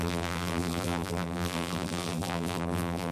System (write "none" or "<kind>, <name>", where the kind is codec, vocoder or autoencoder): vocoder, BigVGAN v2